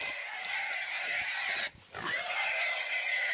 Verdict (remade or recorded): recorded